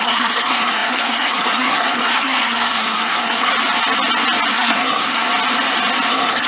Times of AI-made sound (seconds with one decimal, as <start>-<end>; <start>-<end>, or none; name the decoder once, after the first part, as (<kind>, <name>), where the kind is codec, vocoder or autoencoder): 0.0-3.5 (codec, SNAC); 4.5-5.3; 6.1-6.5